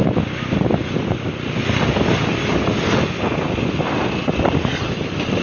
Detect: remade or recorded recorded